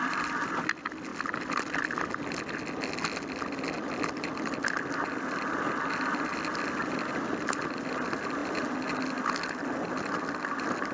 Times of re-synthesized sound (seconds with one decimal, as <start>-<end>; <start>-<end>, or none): none